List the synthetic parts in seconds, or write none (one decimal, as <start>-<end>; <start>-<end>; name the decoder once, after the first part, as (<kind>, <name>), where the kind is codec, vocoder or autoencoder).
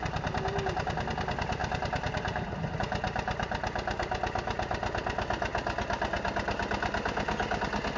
1.6-2.7 (vocoder, BigVGAN v2)